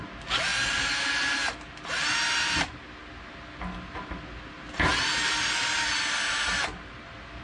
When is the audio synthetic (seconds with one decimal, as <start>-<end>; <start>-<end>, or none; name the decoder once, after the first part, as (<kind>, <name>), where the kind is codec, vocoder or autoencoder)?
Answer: none